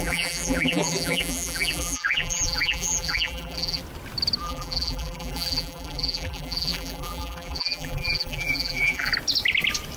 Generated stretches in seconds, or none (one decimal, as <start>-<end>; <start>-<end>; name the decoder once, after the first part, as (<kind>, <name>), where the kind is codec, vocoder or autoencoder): 0.0-3.8 (vocoder, BigVGAN v2); 4.4-9.1